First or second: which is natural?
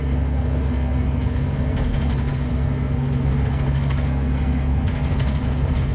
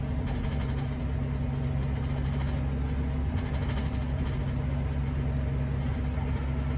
second